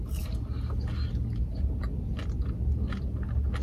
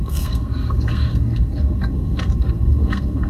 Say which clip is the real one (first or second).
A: first